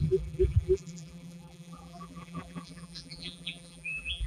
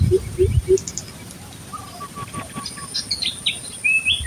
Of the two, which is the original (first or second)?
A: second